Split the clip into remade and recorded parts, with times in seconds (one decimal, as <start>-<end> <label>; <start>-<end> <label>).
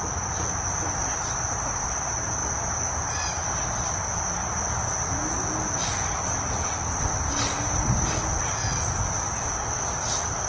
0.0-10.5 recorded